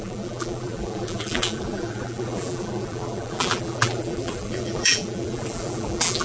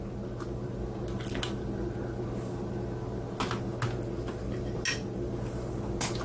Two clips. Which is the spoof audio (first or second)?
first